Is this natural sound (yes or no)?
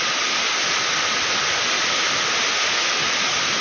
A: yes